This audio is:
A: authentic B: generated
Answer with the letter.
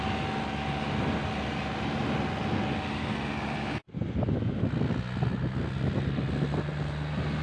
A